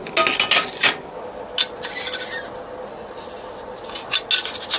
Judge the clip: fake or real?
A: real